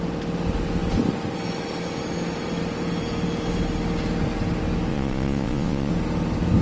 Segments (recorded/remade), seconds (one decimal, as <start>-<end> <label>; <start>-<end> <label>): 0.0-4.9 recorded; 4.9-5.9 remade; 5.9-6.6 recorded